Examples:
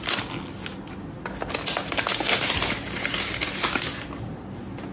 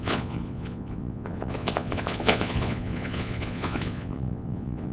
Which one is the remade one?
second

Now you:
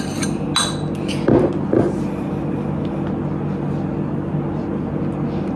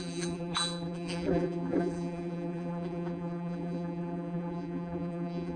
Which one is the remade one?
second